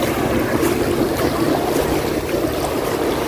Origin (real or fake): real